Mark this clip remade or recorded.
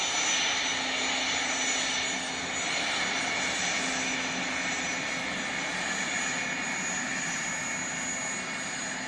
recorded